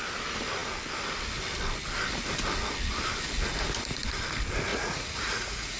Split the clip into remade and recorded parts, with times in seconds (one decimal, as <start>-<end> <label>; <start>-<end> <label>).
0.0-4.7 recorded; 4.7-5.8 remade